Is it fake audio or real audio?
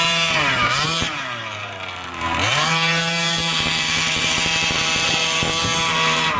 fake